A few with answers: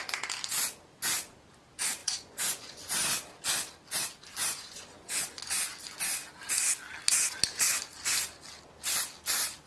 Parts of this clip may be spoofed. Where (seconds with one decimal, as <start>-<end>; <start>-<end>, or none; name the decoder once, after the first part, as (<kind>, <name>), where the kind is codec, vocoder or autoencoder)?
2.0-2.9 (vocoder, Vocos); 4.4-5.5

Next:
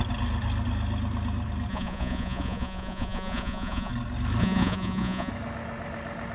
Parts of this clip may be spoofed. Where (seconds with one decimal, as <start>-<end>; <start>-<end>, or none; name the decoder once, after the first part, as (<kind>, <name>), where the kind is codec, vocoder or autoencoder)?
1.7-3.9 (vocoder, Vocos); 4.4-5.3

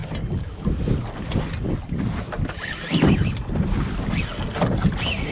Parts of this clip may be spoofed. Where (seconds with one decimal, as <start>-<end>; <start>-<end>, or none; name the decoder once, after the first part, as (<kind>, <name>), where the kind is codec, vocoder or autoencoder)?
none

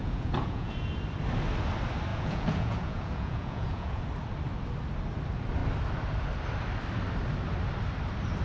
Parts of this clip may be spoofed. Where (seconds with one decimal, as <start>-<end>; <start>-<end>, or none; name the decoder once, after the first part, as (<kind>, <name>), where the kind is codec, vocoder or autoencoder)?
0.0-1.0 (vocoder, Vocos); 2.1-4.0

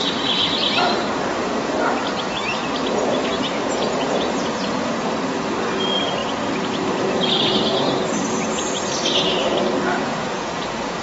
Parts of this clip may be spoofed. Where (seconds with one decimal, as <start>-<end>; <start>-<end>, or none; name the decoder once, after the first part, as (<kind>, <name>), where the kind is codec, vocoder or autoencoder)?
3.2-5.1 (vocoder, Vocos); 9.9-11.0